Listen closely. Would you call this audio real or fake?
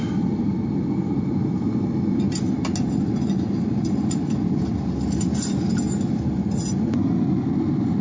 real